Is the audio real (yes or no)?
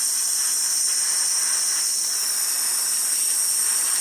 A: yes